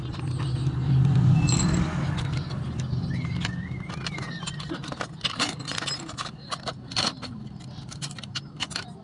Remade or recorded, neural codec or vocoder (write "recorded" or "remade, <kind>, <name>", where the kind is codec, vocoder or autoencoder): recorded